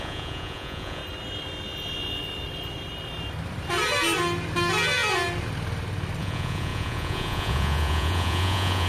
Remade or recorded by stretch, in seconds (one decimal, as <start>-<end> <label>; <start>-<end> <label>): 0.0-1.0 remade; 1.0-6.2 recorded; 6.2-8.9 remade